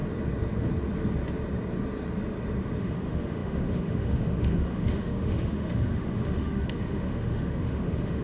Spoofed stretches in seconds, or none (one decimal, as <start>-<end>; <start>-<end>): 2.8-8.2